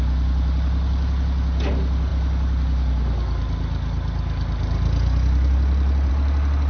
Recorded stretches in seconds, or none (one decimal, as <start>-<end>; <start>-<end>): 0.0-6.7